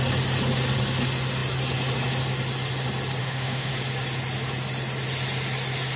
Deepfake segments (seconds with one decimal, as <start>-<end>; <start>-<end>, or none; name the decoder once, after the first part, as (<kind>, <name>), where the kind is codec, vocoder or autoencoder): 3.2-3.7 (autoencoder, DAC-VAE)

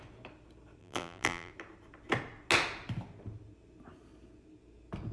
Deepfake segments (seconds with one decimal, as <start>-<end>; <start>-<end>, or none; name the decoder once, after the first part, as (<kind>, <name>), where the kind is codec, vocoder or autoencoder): 0.8-1.5 (vocoder, BigVGAN v2)

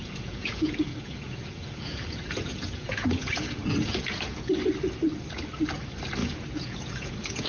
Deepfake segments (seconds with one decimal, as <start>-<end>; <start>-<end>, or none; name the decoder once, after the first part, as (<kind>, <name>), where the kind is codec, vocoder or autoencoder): 0.0-4.5 (vocoder, Vocos); 6.2-7.5

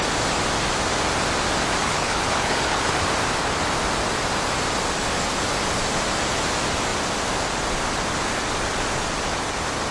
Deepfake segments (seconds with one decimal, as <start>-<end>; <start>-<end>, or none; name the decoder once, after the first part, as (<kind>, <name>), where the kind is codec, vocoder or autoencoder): 1.8-2.9 (codec, HILCodec)

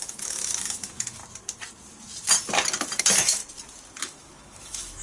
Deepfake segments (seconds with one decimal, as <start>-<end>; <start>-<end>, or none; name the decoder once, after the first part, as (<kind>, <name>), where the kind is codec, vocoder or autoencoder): 0.0-1.2 (autoencoder, DAC-VAE); 3.0-3.4; 4.0-5.0

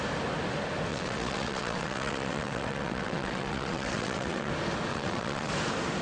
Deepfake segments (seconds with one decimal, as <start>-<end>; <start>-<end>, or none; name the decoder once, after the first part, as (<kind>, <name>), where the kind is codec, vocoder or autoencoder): 0.9-4.5 (vocoder, WaveNeXt); 4.9-5.5

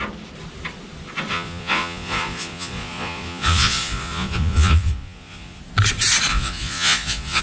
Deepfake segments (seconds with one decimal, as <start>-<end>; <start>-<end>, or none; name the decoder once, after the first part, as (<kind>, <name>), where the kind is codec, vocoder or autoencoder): 1.3-5.6 (vocoder, Vocos); 6.3-7.4

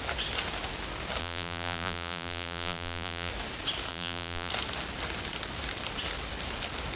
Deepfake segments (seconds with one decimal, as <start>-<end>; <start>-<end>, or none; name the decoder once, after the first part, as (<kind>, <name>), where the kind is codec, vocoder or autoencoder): 1.2-3.3 (vocoder, BigVGAN v2); 3.9-4.5